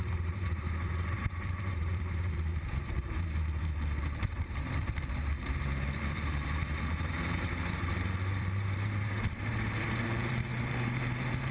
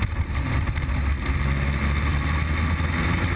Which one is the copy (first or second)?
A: first